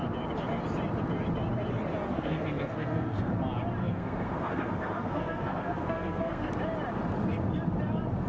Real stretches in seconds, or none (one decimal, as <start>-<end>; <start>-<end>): 0.0-2.1; 3.3-3.8; 6.5-8.3